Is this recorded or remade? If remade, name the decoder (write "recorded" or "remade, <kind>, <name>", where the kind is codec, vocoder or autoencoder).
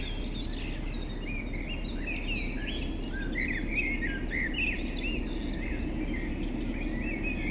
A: recorded